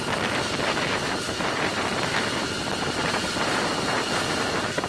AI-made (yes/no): no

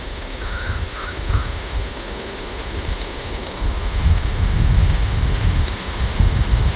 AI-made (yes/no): yes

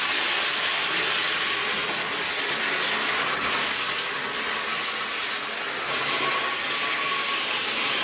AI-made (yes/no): no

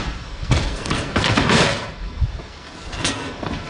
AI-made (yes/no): yes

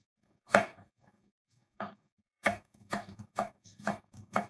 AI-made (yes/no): yes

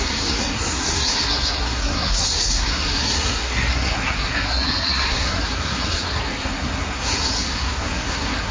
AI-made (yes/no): yes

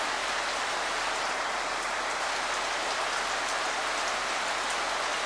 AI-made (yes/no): no